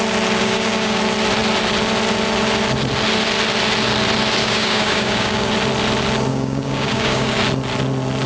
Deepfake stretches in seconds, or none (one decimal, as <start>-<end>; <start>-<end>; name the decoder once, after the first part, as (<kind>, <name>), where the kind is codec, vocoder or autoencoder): 0.4-1.0 (codec, DAC); 4.4-5.5; 6.3-7.4